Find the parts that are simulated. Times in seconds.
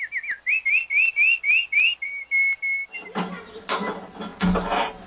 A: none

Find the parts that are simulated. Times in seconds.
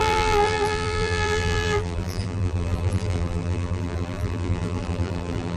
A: 0.0-5.6 (vocoder, BigVGAN v2)